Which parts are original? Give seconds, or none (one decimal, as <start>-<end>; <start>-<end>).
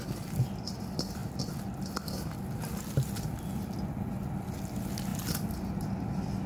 0.0-6.5